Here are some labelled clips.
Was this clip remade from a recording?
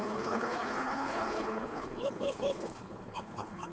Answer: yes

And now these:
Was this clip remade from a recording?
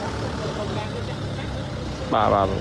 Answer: no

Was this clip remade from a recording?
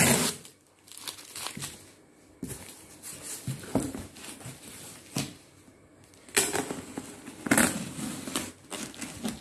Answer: no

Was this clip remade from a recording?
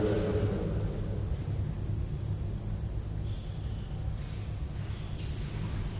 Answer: no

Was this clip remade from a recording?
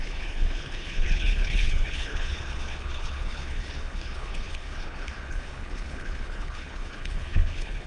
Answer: yes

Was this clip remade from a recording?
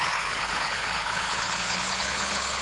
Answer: yes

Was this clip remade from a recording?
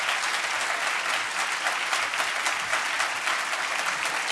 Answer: no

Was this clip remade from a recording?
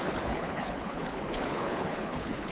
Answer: yes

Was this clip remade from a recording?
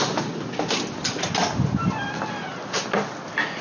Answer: no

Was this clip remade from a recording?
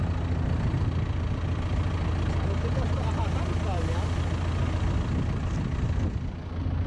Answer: no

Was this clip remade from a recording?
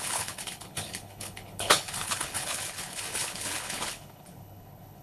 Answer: yes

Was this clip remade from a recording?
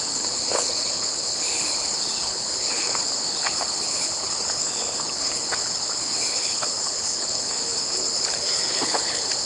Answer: yes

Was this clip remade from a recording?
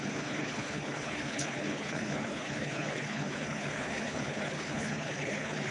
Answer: yes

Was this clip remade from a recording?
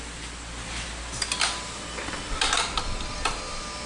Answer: no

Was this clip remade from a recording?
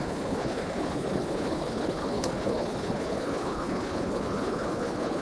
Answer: yes